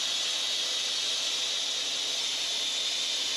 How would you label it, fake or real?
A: real